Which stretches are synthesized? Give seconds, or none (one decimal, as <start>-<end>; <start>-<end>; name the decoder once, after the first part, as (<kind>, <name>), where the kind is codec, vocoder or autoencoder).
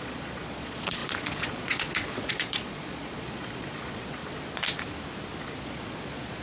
0.0-4.2 (vocoder, Vocos); 5.6-6.4